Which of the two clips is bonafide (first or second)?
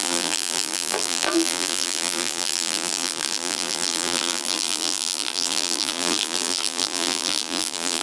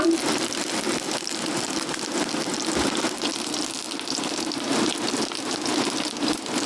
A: second